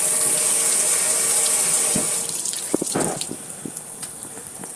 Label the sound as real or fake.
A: real